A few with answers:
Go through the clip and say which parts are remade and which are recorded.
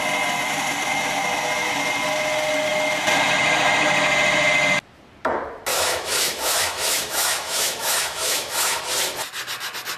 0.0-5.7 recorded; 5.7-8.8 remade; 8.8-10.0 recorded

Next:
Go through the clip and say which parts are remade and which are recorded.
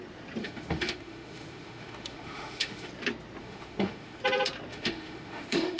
0.0-0.4 recorded; 0.4-2.9 remade; 2.9-3.4 recorded; 3.4-4.2 remade; 4.2-4.7 recorded; 4.7-5.8 remade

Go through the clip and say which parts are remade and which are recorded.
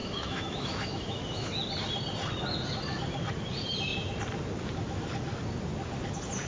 0.0-1.5 remade; 1.5-6.5 recorded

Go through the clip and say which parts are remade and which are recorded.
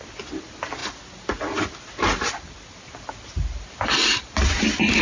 0.0-5.0 recorded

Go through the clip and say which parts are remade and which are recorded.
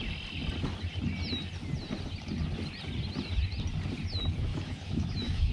0.0-4.5 recorded; 4.5-5.5 remade